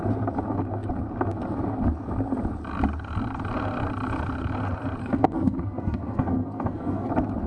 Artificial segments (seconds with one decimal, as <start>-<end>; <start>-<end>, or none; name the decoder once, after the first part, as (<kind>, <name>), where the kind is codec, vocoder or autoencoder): 5.0-7.1 (codec, SNAC)